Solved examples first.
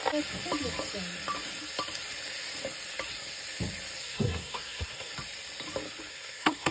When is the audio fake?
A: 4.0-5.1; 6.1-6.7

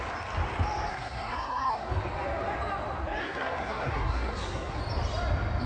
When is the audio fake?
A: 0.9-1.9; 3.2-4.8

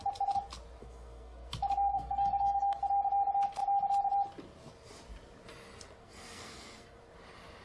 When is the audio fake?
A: 0.8-1.5; 1.9-2.8; 6.0-7.0

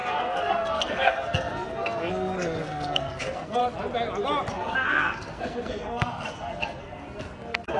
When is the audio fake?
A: 0.0-3.6; 4.5-7.8